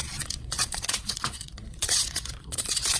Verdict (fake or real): fake